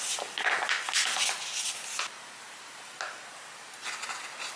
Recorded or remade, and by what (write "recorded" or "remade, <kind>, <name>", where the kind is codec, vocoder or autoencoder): recorded